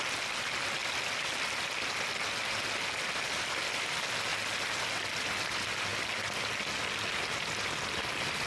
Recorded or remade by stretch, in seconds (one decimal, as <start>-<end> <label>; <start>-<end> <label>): 0.0-8.5 recorded